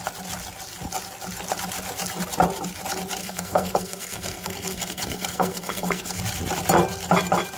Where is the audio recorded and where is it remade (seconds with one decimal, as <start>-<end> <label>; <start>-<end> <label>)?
0.0-3.2 recorded; 3.2-6.2 remade; 6.2-7.6 recorded